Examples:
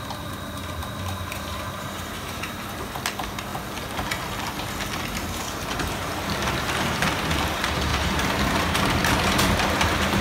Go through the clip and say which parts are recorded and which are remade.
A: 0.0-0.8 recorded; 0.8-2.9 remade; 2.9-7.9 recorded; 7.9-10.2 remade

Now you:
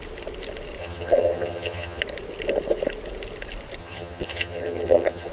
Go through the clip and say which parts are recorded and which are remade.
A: 0.0-0.8 recorded; 0.8-2.0 remade; 2.0-3.8 recorded; 3.8-5.3 remade